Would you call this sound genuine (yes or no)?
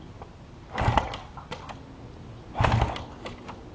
yes